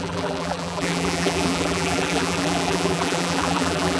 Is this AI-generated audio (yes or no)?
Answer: yes